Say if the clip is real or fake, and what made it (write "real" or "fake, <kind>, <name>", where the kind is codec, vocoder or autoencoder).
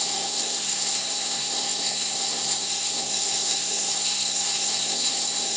fake, codec, SNAC